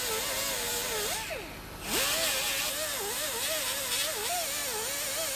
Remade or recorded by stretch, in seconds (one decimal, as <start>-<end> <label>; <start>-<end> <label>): 0.0-5.4 recorded